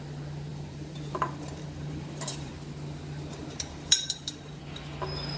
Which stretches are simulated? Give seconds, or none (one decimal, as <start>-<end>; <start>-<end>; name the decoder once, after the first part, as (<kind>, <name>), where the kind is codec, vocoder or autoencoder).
0.5-2.5 (vocoder, BigVGAN v2); 3.4-4.6